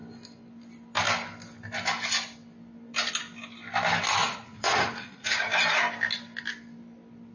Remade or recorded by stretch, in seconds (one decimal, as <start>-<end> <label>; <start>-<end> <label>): 0.0-4.2 recorded; 4.2-5.5 remade; 5.5-7.3 recorded